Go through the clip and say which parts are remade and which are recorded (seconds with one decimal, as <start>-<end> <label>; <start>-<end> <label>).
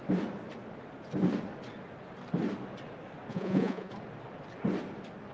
0.0-3.3 recorded; 3.3-3.9 remade; 3.9-5.3 recorded